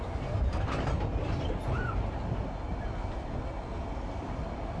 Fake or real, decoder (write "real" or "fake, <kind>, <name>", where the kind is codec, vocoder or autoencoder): real